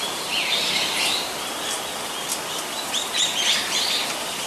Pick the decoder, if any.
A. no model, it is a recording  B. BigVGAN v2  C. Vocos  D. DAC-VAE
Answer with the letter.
A